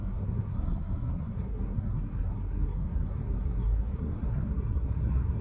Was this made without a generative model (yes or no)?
no